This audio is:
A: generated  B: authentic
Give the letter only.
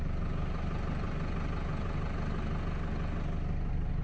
B